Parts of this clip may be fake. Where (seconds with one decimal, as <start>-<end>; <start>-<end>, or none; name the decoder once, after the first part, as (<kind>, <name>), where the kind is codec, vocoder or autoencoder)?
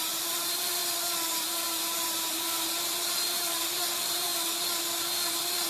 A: 0.0-4.3 (vocoder, BigVGAN v2); 5.3-5.7